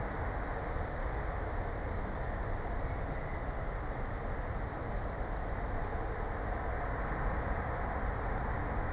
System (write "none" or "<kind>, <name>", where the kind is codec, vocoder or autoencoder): none